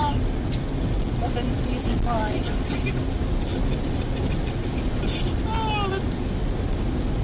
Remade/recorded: recorded